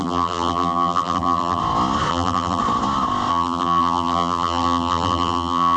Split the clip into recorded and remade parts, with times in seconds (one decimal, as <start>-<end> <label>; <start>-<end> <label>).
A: 0.0-1.6 remade; 1.6-2.1 recorded; 2.1-2.6 remade; 2.6-3.3 recorded; 3.3-5.8 remade